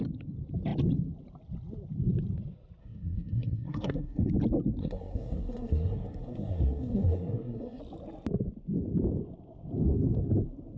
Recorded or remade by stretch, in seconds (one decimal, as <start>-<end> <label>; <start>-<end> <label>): 0.0-2.8 recorded; 2.8-4.3 remade; 4.3-4.8 recorded; 4.8-7.8 remade; 7.8-10.8 recorded